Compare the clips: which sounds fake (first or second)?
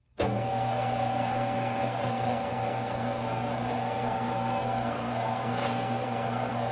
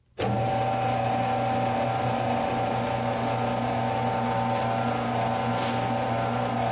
first